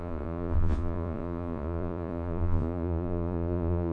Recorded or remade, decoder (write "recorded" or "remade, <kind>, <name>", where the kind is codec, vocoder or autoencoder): remade, vocoder, Vocos